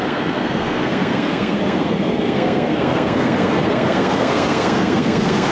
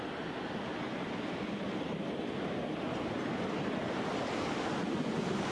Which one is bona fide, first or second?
second